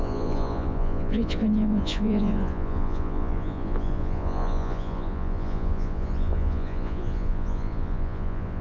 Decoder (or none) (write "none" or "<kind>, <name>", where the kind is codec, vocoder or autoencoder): vocoder, Vocos